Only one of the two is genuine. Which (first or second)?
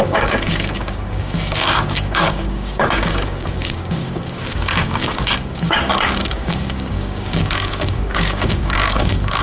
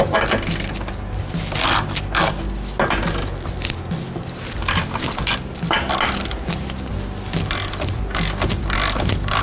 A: second